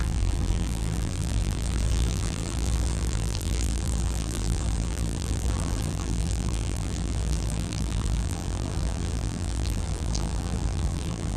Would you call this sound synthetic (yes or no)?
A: yes